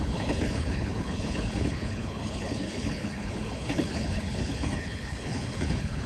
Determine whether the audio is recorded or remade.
remade